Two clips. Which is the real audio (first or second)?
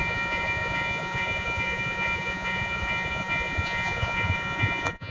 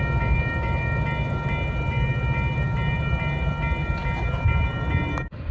second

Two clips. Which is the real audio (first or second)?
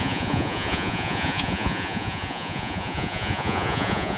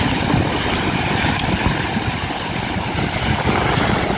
second